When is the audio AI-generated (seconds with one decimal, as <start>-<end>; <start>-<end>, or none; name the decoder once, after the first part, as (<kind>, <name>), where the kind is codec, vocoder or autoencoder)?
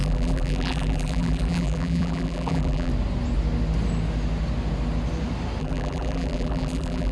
0.0-2.9 (vocoder, BigVGAN v2); 5.6-7.1